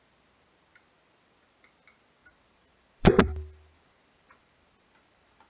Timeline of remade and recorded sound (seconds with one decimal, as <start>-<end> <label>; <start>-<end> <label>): 0.0-2.2 recorded; 2.2-5.5 remade